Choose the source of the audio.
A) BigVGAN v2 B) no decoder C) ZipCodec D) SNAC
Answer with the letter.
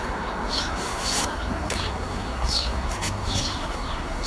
D